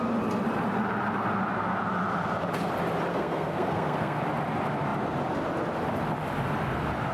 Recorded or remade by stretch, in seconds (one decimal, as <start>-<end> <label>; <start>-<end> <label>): 0.0-3.1 recorded; 3.1-4.2 remade; 4.2-7.1 recorded